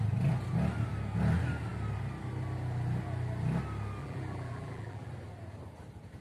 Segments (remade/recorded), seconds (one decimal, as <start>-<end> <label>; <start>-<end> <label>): 0.0-4.0 recorded; 4.0-5.1 remade; 5.1-6.2 recorded